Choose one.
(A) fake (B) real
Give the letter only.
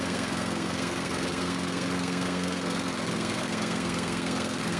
A